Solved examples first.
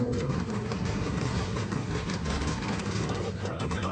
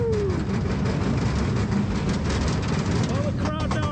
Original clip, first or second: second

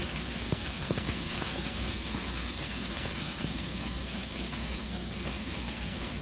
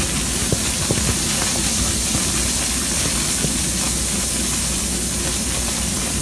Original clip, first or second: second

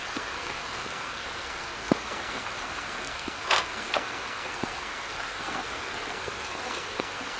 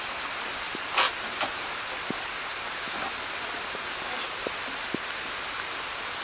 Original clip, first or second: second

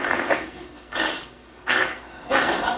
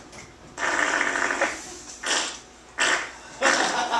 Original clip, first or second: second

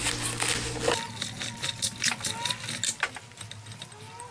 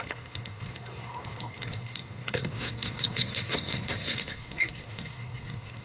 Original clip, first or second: first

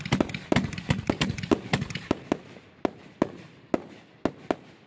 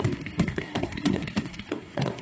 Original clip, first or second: first